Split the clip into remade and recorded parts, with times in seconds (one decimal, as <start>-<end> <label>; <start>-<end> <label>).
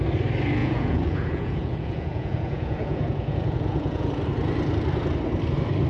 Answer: 0.0-0.6 recorded; 0.6-4.1 remade; 4.1-5.9 recorded